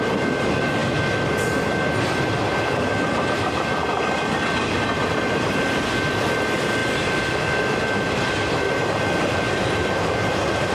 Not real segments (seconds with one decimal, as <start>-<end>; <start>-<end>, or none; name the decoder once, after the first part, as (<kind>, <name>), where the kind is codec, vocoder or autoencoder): 0.0-0.8 (vocoder, BigVGAN v2); 2.5-3.8; 5.0-6.8; 7.4-10.7